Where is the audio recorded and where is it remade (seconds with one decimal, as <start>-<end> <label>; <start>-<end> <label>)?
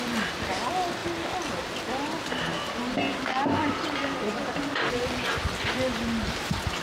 0.0-6.8 recorded